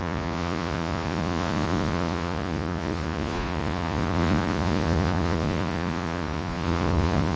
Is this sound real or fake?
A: fake